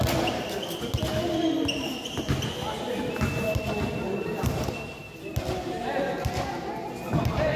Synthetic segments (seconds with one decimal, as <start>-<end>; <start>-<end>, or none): none